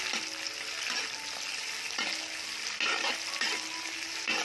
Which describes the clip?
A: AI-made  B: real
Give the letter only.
B